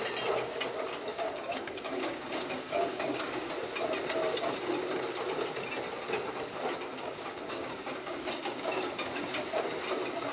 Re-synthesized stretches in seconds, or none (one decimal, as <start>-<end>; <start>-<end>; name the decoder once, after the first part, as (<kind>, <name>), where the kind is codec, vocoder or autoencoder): 1.1-3.5 (codec, DAC); 6.9-8.9